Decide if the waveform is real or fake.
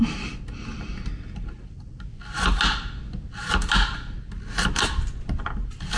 real